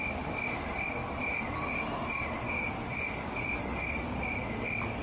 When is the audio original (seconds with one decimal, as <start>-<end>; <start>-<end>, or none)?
0.0-5.0